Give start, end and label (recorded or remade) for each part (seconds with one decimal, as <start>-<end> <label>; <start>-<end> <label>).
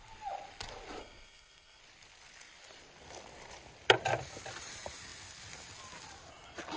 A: 0.0-1.0 recorded; 1.0-1.8 remade; 1.8-6.8 recorded